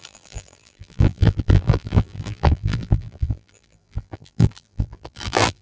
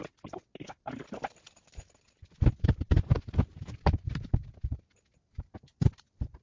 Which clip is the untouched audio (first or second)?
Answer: second